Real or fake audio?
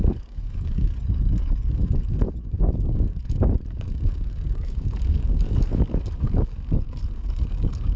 fake